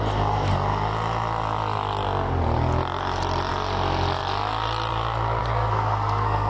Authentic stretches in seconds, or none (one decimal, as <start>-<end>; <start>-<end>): 0.0-5.4